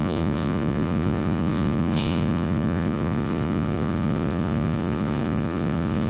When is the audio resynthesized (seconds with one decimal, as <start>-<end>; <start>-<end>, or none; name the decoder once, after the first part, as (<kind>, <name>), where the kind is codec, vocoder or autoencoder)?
0.0-6.1 (vocoder, Vocos)